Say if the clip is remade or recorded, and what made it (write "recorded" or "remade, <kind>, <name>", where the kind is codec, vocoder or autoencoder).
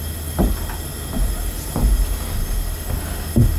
recorded